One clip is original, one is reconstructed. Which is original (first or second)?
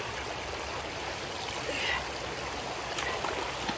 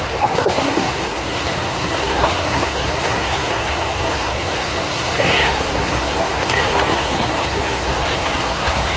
first